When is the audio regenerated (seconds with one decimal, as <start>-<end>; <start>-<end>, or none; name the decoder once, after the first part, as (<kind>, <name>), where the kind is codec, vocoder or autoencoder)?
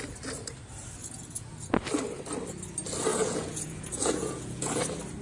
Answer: 1.0-1.7 (vocoder, Vocos); 3.1-4.8